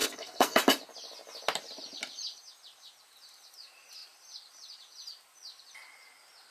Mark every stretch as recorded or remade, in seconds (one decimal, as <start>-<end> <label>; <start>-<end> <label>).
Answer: 0.0-0.6 remade; 0.6-6.5 recorded